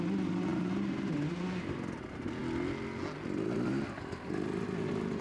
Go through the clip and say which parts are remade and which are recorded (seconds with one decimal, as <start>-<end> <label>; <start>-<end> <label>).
0.0-0.5 recorded; 0.5-1.3 remade; 1.3-5.2 recorded